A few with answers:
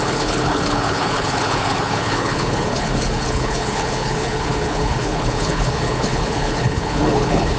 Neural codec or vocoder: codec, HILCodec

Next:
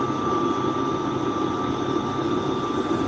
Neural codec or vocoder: none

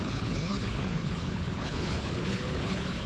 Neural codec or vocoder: codec, HILCodec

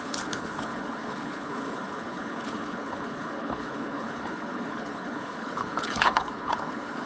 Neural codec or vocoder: codec, HILCodec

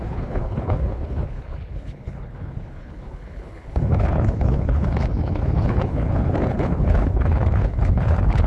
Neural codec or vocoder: codec, HILCodec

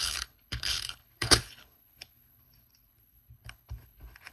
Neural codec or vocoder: codec, HILCodec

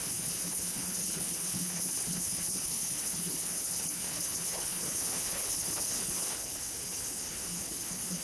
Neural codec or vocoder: codec, HILCodec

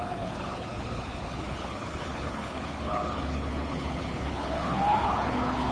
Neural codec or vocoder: codec, HILCodec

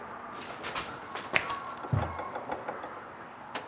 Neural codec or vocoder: none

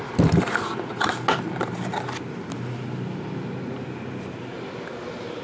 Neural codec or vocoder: none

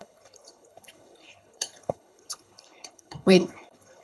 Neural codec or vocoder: codec, HILCodec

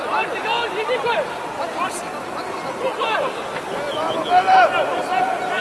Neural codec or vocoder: none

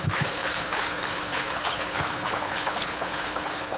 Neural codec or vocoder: codec, HILCodec